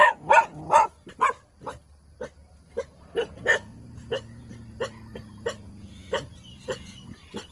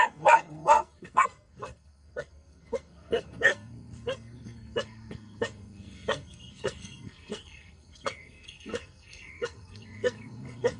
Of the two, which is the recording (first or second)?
first